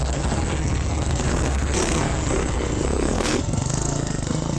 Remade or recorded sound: remade